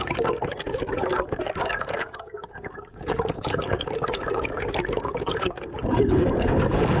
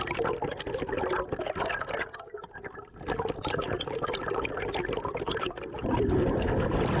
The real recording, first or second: second